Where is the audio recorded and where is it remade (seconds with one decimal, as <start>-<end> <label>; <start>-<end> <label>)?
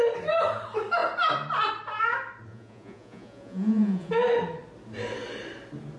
0.0-2.5 recorded; 2.5-4.1 remade; 4.1-6.0 recorded